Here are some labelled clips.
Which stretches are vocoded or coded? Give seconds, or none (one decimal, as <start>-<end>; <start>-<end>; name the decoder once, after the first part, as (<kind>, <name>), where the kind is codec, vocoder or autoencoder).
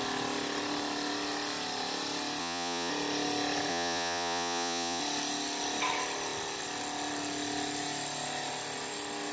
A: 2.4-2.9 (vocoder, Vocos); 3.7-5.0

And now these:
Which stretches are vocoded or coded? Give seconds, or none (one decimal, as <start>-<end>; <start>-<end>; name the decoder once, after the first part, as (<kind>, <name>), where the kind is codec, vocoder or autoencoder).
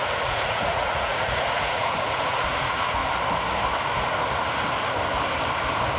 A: 0.0-3.0 (vocoder, Vocos)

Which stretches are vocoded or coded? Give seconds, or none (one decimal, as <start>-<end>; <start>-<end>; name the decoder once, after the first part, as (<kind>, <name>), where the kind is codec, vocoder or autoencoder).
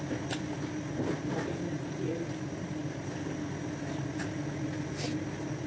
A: none